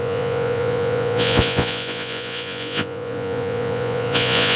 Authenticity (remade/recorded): remade